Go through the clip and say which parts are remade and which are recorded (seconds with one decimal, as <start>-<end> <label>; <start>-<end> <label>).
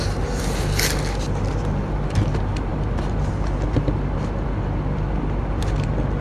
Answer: 0.0-6.2 recorded